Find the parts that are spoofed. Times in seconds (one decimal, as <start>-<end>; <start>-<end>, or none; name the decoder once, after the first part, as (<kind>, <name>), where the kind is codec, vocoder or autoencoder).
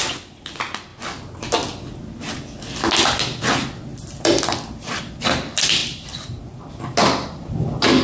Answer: 3.9-5.2 (vocoder, BigVGAN v2)